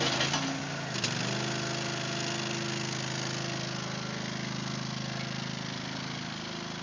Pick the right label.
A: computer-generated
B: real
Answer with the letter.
B